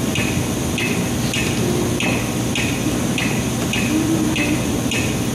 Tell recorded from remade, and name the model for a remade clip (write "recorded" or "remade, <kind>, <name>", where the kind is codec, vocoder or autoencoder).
recorded